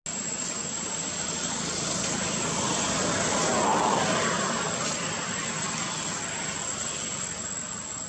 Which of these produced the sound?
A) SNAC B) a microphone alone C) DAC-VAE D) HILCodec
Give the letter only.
B